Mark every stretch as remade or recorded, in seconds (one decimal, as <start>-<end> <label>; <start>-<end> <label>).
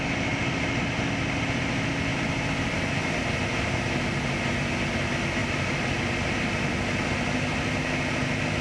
0.0-8.6 recorded